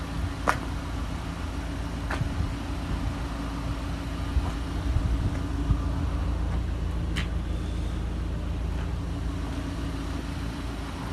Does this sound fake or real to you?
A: real